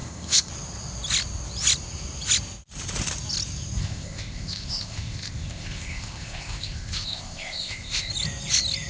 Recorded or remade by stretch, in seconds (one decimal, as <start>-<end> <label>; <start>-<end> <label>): 0.0-0.5 remade; 0.5-3.8 recorded; 3.8-8.1 remade; 8.1-8.9 recorded